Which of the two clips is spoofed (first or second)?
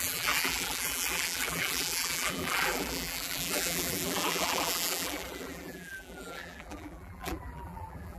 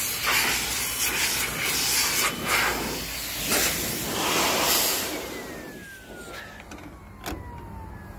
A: first